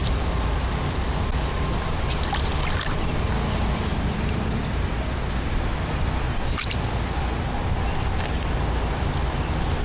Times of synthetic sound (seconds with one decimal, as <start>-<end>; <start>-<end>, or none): 0.0-0.6; 3.9-7.8